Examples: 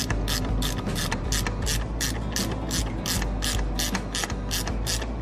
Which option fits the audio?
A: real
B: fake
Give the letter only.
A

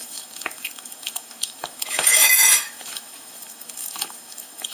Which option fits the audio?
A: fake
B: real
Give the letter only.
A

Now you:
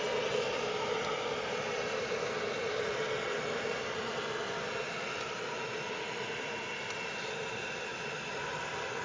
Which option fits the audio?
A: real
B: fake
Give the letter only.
A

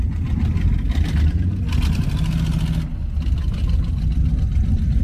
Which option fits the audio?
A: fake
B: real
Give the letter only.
B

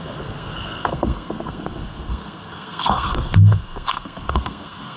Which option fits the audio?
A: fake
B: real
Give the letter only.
A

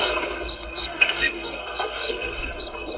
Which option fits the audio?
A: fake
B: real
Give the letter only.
A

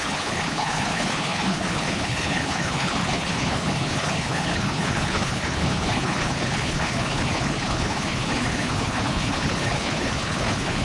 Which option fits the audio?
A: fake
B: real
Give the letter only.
A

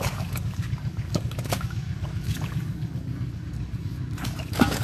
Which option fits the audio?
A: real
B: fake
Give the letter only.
B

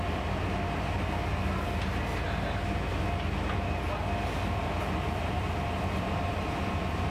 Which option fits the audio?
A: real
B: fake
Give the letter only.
A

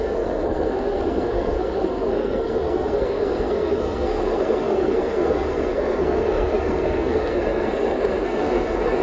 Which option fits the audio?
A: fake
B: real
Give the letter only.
A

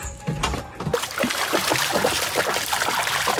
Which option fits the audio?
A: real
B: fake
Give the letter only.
A